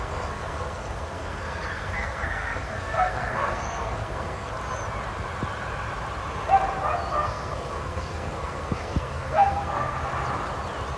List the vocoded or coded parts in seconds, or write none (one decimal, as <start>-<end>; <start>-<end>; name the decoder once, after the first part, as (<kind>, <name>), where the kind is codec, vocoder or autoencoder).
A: 0.0-4.5 (codec, SNAC); 7.1-10.0